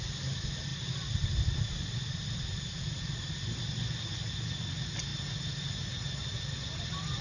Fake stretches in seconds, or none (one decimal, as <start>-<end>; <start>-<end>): none